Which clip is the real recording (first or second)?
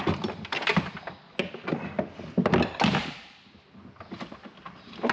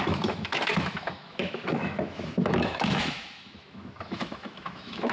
first